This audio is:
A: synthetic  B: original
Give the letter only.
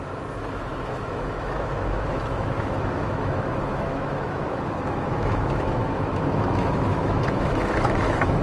A